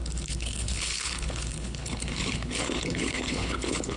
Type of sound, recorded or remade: remade